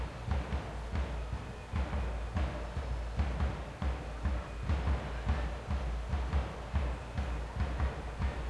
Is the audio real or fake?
real